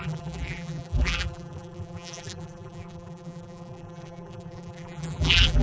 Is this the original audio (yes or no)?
no